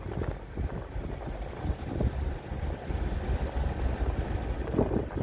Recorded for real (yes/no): yes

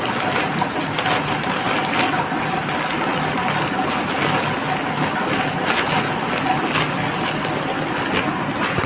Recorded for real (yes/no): yes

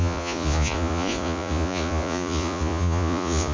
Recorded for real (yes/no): no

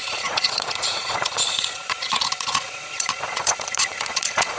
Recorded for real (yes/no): no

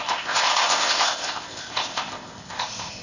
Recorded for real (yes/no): no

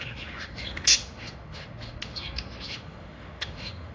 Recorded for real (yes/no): no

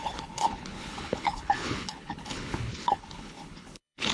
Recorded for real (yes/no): no